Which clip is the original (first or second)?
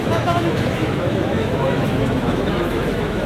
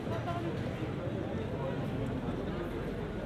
second